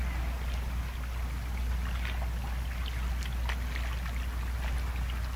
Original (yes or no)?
yes